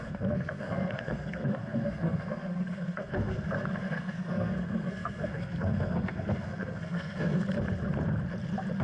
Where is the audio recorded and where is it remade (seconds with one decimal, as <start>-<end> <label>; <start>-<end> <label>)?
0.0-7.4 remade; 7.4-8.8 recorded

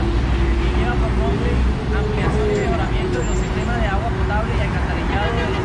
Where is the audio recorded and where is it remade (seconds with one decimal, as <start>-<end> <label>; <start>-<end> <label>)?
0.0-2.6 recorded; 2.6-3.2 remade; 3.2-5.6 recorded

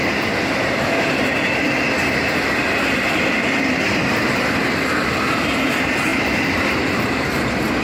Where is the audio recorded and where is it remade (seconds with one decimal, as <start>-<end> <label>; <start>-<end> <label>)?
0.0-7.8 recorded